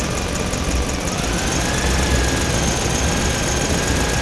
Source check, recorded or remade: recorded